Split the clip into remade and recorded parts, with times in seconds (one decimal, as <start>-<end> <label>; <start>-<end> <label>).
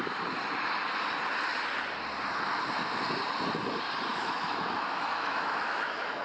0.0-4.1 recorded; 4.1-6.2 remade